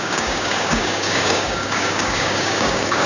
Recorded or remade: remade